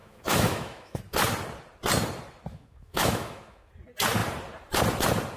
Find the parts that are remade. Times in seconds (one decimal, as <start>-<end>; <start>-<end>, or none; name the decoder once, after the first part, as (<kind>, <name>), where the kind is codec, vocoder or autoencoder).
0.0-1.0 (autoencoder, DAC-VAE); 2.5-3.7